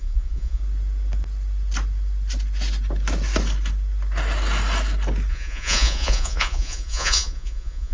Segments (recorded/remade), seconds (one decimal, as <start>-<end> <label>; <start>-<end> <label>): 0.0-0.6 remade; 0.6-5.3 recorded; 5.3-7.9 remade